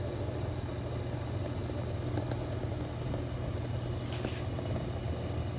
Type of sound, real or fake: real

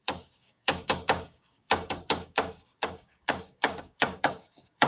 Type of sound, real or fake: fake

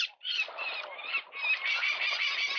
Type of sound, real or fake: real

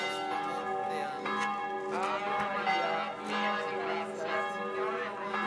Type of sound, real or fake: real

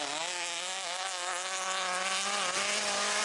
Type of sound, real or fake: real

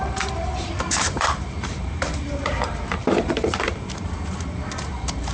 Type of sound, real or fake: fake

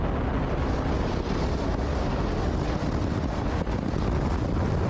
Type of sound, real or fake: real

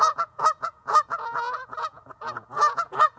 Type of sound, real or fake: fake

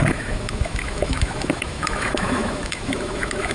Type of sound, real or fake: fake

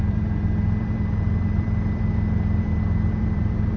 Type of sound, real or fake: fake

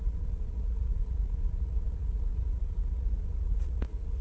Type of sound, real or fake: fake